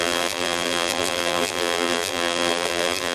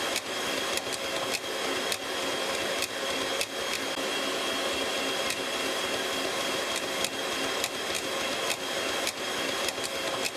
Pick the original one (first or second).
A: second